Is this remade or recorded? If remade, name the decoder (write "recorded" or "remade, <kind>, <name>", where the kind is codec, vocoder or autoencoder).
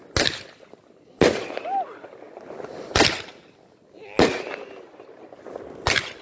recorded